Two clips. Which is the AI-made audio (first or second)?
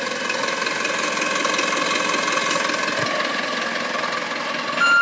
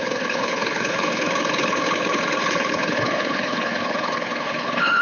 second